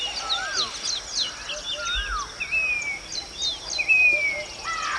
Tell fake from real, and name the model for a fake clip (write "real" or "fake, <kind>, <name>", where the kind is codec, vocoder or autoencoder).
real